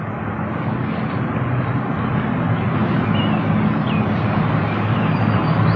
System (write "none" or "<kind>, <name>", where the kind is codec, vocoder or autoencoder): none